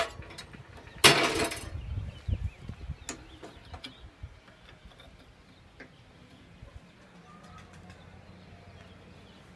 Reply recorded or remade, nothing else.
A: recorded